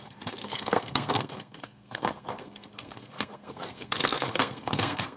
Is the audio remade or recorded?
remade